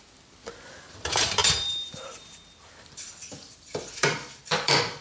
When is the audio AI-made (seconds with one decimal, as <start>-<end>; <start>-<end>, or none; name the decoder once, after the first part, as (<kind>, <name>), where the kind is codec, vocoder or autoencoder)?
0.0-5.0 (vocoder, BigVGAN v2)